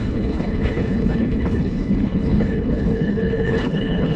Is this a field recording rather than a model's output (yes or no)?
no